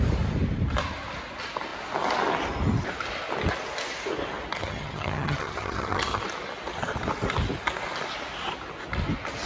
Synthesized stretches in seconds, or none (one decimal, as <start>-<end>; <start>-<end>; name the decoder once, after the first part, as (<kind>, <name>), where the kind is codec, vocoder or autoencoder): 4.6-6.2 (vocoder, HiFi-GAN)